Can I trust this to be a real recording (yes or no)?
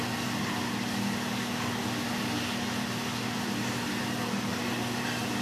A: yes